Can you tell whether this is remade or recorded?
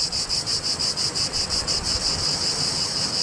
remade